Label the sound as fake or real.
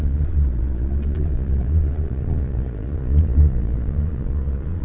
fake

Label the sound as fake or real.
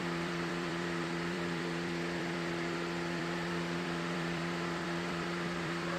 fake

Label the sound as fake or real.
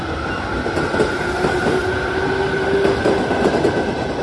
real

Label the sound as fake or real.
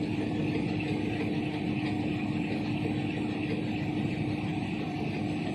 real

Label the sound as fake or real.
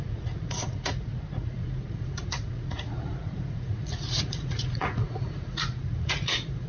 fake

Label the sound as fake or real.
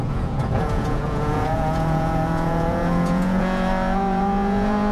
fake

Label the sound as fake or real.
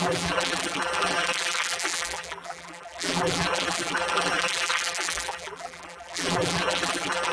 fake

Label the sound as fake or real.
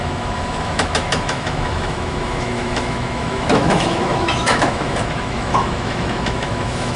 fake